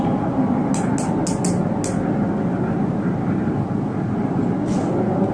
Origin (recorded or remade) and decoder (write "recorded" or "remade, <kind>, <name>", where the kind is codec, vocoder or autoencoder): recorded